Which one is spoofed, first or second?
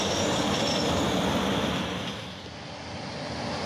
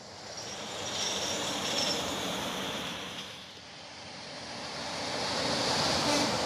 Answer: second